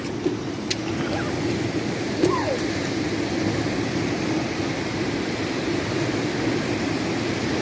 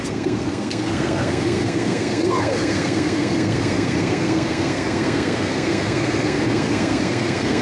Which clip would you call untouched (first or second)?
first